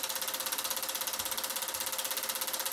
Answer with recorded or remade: recorded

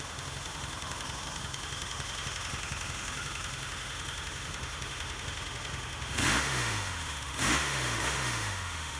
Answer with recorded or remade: remade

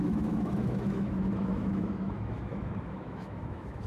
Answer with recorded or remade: remade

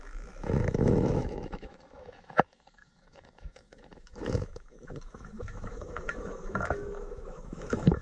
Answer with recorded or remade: remade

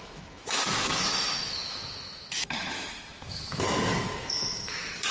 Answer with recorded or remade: remade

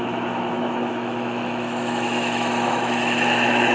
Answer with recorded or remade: remade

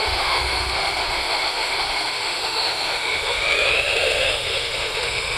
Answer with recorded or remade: remade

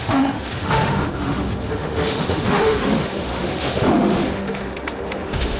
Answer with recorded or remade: remade